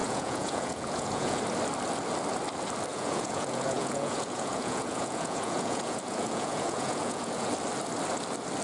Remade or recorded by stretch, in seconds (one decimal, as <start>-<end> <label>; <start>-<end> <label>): 0.0-1.4 remade; 1.4-2.9 recorded; 2.9-7.5 remade; 7.5-8.6 recorded